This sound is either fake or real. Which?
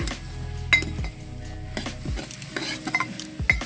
real